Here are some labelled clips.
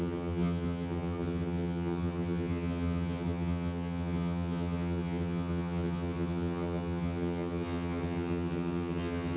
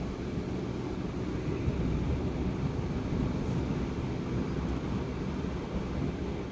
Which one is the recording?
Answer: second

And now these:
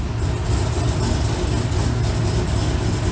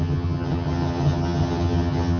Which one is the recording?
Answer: first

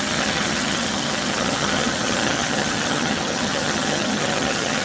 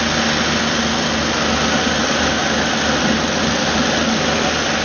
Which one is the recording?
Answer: second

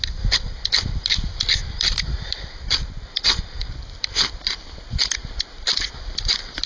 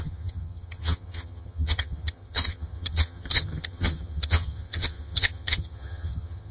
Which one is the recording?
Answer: first